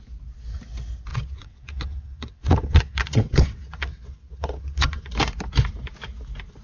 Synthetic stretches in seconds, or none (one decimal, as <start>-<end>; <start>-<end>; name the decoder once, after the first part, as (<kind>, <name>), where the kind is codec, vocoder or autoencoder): 1.1-5.1 (vocoder, WaveNeXt)